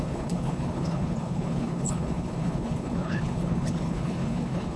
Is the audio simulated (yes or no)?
yes